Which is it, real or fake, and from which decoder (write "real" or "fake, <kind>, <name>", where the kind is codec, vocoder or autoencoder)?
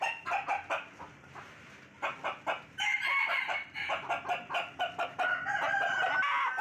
real